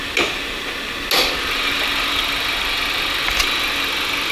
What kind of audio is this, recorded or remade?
recorded